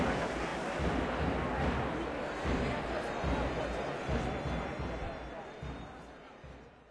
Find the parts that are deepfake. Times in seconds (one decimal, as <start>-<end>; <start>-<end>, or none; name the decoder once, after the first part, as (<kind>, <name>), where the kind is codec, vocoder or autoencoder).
none